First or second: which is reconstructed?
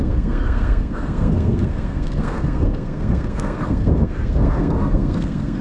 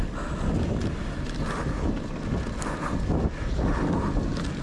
first